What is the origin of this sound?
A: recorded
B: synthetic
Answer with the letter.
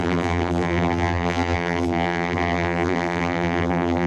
B